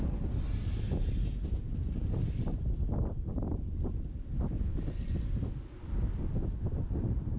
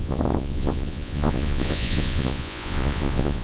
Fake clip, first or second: second